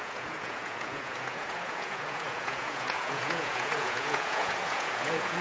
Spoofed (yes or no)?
yes